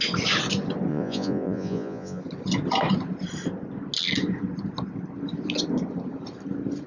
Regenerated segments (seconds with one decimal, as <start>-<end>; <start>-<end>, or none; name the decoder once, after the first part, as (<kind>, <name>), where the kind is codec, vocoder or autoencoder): 0.9-2.2 (vocoder, Vocos)